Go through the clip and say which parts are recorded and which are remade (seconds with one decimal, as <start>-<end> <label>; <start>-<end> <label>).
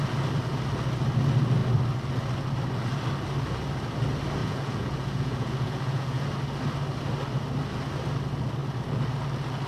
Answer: 0.0-4.4 recorded; 4.4-6.3 remade; 6.3-9.7 recorded